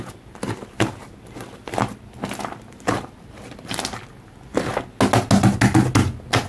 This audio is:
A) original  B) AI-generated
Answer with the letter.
A